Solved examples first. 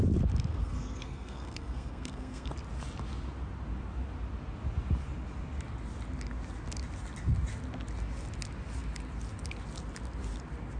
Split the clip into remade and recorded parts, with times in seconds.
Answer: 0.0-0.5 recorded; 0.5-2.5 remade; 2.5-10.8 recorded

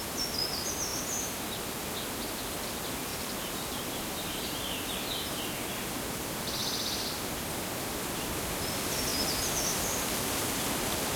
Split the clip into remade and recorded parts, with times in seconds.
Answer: 0.0-3.1 recorded; 3.1-4.7 remade; 4.7-11.2 recorded

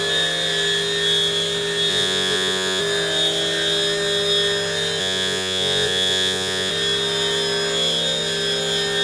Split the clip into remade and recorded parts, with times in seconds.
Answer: 0.0-1.9 recorded; 1.9-2.8 remade; 2.8-5.0 recorded; 5.0-6.7 remade; 6.7-9.0 recorded

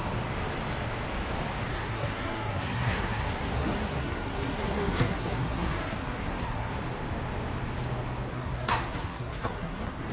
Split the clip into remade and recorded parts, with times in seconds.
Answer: 0.0-1.7 recorded; 1.7-6.7 remade; 6.7-8.3 recorded; 8.3-10.1 remade

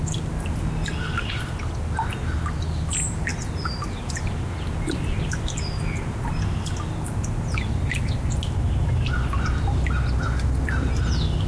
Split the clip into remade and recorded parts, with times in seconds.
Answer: 0.0-11.5 recorded

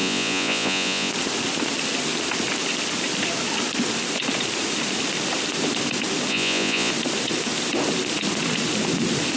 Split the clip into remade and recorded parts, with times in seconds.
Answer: 0.0-1.1 remade; 1.1-6.3 recorded; 6.3-6.9 remade; 6.9-9.4 recorded

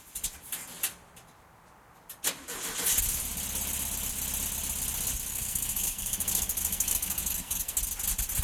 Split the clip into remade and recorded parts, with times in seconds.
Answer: 0.0-5.3 recorded; 5.3-7.8 remade; 7.8-8.4 recorded

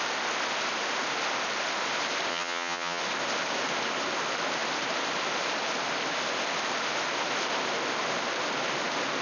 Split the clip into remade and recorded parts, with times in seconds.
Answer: 0.0-2.3 recorded; 2.3-3.0 remade; 3.0-9.2 recorded